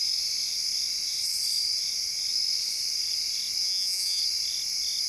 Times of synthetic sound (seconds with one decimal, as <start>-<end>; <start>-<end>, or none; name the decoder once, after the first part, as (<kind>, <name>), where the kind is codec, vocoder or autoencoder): 3.6-4.2 (vocoder, Vocos)